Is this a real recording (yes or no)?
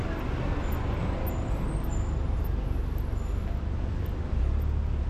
yes